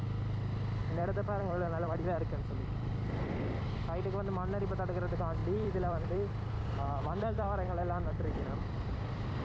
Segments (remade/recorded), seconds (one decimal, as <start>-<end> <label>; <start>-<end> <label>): 0.0-0.8 recorded; 0.8-3.5 remade; 3.5-5.4 recorded; 5.4-9.4 remade